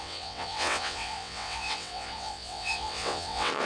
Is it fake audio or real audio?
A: fake